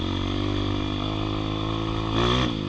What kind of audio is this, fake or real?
real